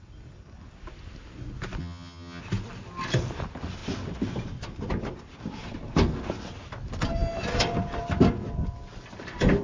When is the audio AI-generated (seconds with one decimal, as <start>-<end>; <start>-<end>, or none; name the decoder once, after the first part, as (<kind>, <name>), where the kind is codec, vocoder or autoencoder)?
1.8-2.4 (vocoder, HiFi-GAN)